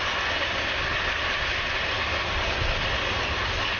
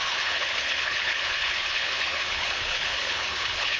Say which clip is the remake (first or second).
second